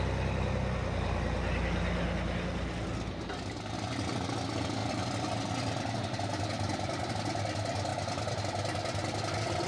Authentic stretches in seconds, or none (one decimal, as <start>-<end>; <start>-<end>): 0.0-9.7